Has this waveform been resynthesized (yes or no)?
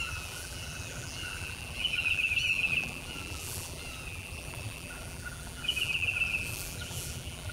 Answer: yes